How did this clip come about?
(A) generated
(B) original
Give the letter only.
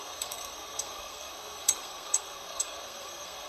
A